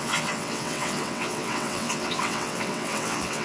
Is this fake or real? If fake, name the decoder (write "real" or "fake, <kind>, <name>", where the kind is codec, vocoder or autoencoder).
fake, vocoder, WaveNeXt